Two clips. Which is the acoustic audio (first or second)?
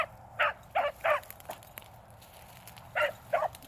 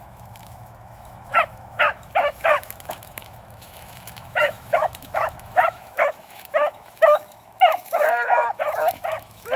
first